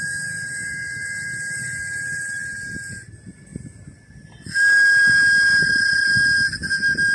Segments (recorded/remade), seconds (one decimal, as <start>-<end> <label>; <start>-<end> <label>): 0.0-7.1 recorded